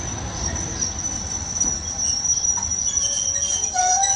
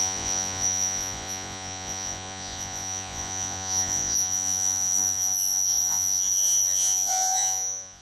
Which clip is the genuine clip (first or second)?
first